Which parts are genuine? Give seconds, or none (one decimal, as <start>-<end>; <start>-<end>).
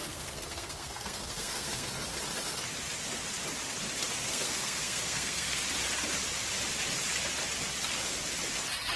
1.9-4.3; 5.6-9.0